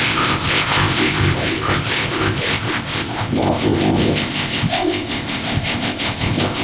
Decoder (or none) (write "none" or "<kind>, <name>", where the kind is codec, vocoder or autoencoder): codec, ZipCodec